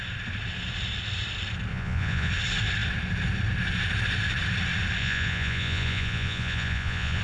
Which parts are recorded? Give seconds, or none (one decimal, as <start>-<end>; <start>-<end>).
0.0-1.7; 2.3-5.0